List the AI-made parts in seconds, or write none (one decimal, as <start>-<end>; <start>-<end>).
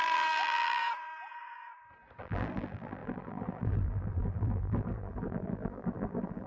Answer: 0.0-0.8; 2.2-6.5